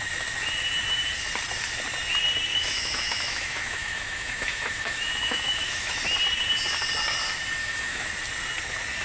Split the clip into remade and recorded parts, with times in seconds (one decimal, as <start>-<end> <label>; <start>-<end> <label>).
0.0-2.5 recorded; 2.5-5.9 remade; 5.9-7.6 recorded; 7.6-8.1 remade; 8.1-9.0 recorded